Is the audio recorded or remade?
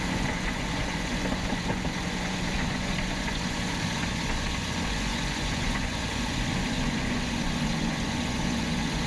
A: remade